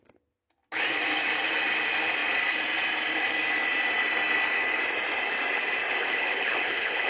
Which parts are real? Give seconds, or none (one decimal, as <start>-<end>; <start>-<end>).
0.0-6.0